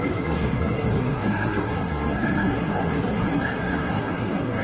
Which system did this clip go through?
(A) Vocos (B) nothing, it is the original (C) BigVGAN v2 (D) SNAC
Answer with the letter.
D